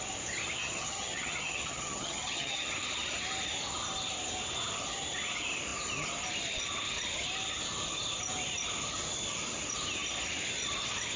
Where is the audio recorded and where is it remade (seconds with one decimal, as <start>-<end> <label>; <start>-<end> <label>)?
0.0-0.6 recorded; 0.6-2.7 remade; 2.7-11.2 recorded